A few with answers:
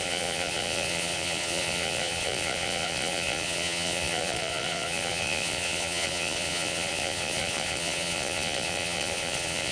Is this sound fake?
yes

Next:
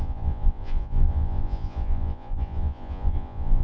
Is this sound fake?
yes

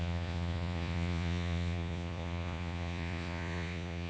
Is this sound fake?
yes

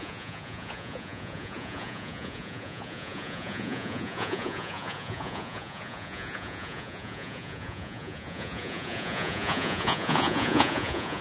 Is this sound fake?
yes